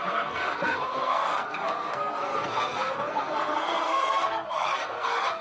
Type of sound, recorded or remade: remade